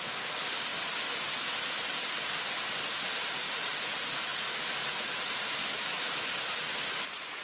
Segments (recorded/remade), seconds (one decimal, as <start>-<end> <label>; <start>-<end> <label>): 0.0-5.6 recorded; 5.6-6.3 remade; 6.3-7.4 recorded